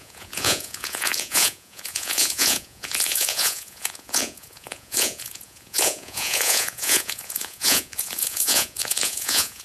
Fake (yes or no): yes